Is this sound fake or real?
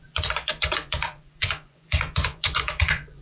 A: fake